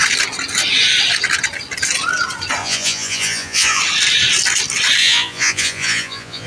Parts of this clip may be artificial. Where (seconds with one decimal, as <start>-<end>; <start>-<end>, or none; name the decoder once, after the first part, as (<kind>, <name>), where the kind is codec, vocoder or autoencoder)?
2.6-3.8 (vocoder, Vocos); 5.0-6.5